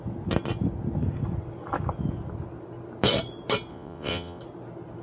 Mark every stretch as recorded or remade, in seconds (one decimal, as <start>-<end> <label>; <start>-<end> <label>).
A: 0.0-3.7 recorded; 3.7-4.4 remade; 4.4-5.0 recorded